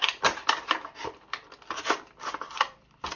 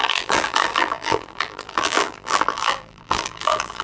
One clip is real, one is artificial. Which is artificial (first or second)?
second